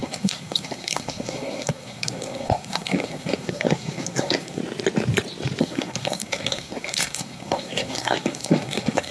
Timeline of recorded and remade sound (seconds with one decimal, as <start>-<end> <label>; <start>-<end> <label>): 0.0-4.6 remade; 4.6-5.6 recorded; 5.6-9.1 remade